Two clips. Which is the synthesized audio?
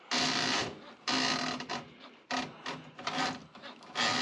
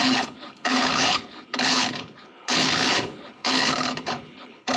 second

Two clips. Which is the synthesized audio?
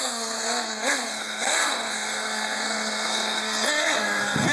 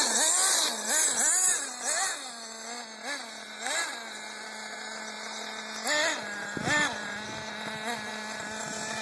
first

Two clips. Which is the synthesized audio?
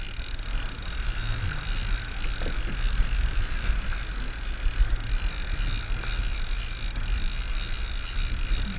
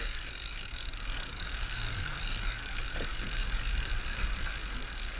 second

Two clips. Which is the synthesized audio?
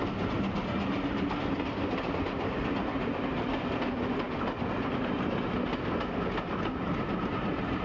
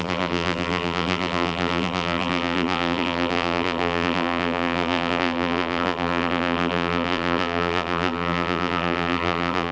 second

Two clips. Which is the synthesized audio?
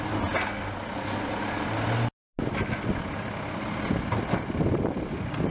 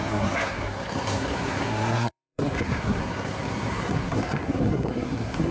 second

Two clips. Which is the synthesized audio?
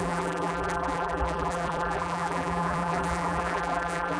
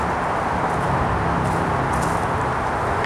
first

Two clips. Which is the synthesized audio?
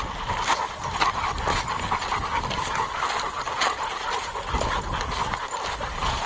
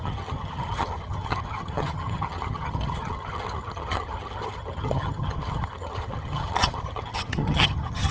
second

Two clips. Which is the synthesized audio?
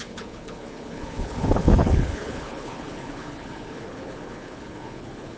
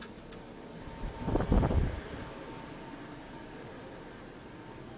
first